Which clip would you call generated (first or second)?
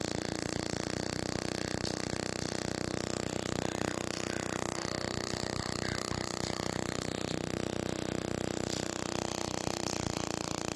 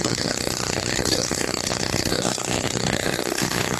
second